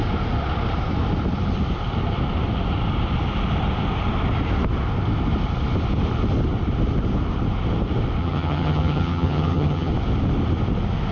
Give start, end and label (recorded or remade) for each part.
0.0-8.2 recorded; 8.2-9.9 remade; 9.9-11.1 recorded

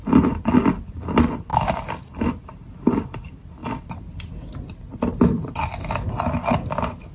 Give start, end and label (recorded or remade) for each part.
0.0-7.1 recorded

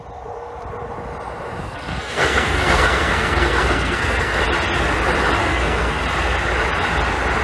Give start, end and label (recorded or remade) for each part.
0.0-1.6 recorded; 1.6-4.4 remade; 4.4-5.4 recorded; 5.4-6.0 remade; 6.0-7.4 recorded

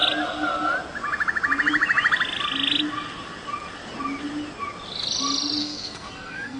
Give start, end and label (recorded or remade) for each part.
0.0-5.6 recorded; 5.6-6.6 remade

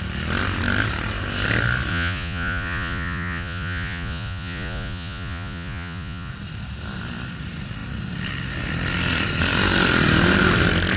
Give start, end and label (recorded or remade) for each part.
0.0-1.9 recorded; 1.9-6.3 remade; 6.3-11.0 recorded